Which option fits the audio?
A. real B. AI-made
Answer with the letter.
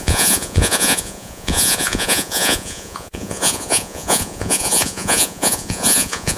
B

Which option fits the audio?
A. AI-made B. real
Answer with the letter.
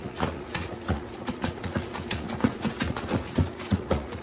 A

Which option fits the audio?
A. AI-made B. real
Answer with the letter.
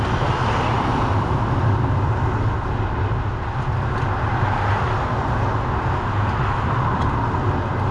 B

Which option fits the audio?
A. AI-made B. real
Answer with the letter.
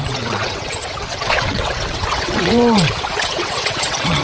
A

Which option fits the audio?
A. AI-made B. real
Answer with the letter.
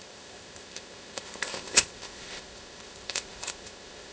A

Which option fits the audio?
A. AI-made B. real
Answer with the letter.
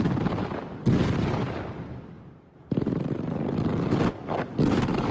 A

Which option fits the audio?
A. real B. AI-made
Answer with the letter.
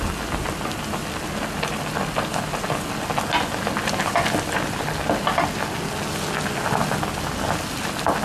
A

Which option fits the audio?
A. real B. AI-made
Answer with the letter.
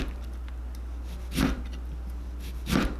A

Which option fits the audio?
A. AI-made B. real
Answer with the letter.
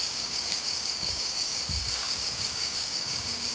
A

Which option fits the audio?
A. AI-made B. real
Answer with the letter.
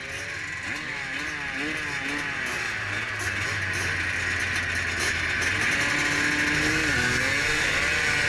B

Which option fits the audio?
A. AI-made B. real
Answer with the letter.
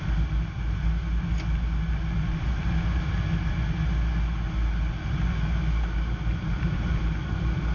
B